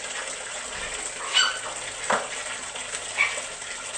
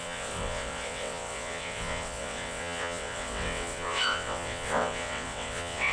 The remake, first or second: second